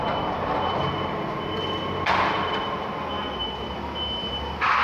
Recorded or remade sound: recorded